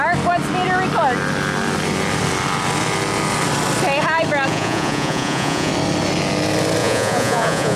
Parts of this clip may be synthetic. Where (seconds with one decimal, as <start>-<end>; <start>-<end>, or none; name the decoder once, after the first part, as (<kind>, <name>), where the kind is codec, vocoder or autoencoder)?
4.5-5.7 (vocoder, Vocos); 6.8-7.8